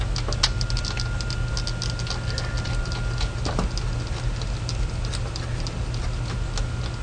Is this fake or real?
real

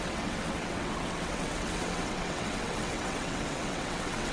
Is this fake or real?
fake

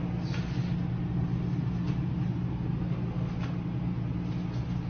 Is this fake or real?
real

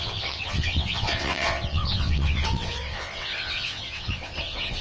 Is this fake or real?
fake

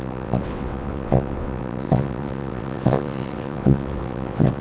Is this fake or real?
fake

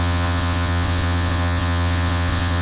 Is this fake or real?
fake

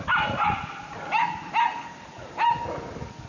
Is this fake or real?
real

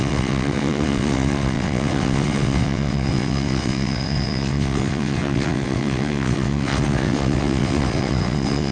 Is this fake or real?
fake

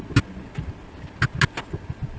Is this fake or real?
real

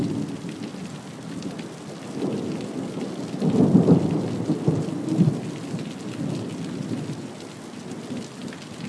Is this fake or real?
real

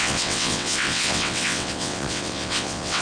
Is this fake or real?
fake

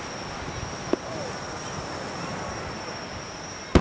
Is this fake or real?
real